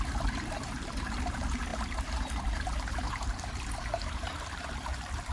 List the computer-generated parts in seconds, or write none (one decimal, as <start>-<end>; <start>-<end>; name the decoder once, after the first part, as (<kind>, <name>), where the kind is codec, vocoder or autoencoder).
0.0-5.3 (vocoder, BigVGAN v2)